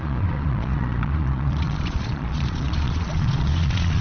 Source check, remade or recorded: remade